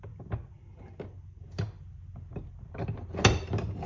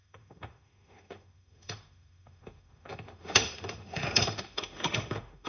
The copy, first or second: second